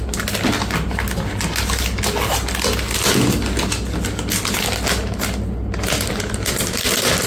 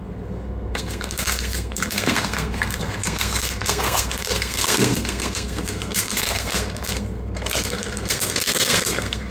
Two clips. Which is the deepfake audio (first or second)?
second